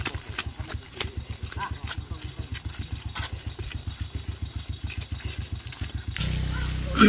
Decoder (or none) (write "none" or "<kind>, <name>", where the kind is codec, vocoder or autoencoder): none